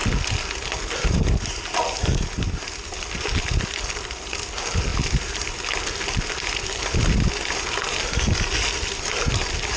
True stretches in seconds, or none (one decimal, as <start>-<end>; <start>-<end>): 0.0-9.8